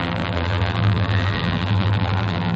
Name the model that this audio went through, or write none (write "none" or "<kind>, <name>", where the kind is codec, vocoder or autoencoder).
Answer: vocoder, BigVGAN v2